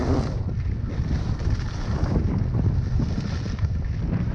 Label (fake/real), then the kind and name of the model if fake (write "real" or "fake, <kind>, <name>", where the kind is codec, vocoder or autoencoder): real